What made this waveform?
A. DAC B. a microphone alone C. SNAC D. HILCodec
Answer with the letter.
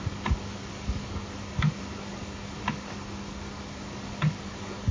A